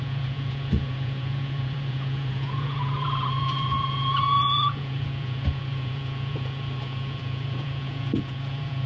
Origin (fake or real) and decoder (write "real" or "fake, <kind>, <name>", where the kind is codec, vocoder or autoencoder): fake, vocoder, Vocos